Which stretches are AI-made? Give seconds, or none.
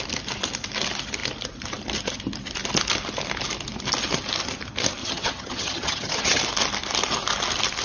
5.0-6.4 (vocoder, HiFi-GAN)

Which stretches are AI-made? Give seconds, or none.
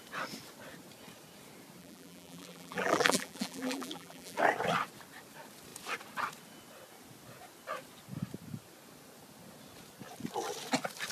1.8-4.4 (vocoder, BigVGAN v2)